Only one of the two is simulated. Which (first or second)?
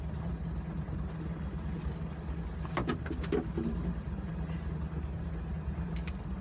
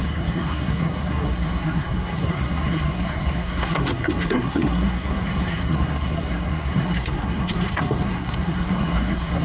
second